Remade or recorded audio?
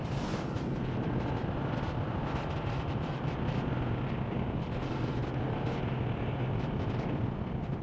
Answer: recorded